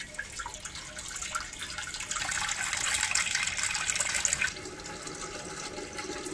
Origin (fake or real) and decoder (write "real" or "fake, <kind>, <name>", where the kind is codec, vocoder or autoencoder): real